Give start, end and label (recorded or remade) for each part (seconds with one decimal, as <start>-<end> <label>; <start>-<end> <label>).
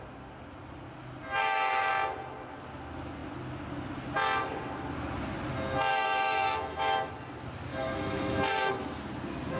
0.0-1.4 recorded; 1.4-1.9 remade; 1.9-5.9 recorded; 5.9-7.1 remade; 7.1-7.7 recorded; 7.7-8.7 remade; 8.7-9.6 recorded